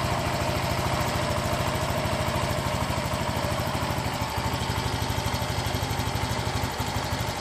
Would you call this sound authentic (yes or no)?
yes